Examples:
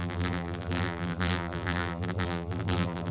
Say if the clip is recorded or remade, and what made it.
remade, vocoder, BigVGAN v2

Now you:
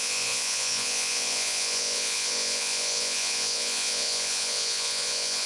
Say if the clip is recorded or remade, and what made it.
remade, vocoder, Vocos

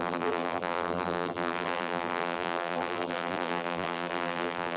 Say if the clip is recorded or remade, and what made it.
remade, vocoder, BigVGAN v2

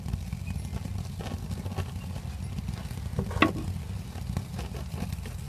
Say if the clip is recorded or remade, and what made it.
recorded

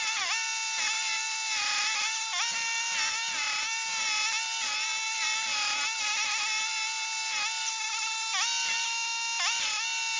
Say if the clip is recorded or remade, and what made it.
recorded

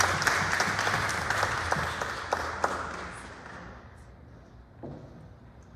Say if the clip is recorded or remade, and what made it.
recorded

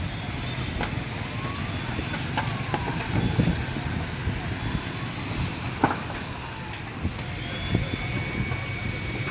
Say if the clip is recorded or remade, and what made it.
recorded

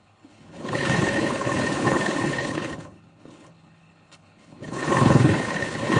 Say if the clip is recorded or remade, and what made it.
remade, codec, HILCodec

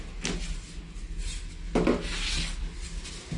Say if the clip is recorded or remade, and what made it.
recorded